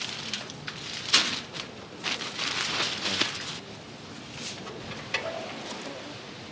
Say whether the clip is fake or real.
real